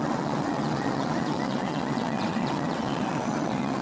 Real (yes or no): no